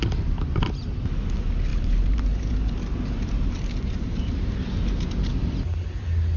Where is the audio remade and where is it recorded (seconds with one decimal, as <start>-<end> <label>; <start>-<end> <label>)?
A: 0.0-1.7 recorded; 1.7-5.1 remade; 5.1-6.4 recorded